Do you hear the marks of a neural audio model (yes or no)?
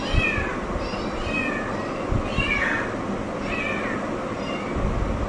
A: no